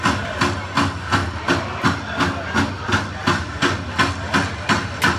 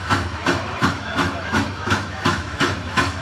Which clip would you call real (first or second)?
first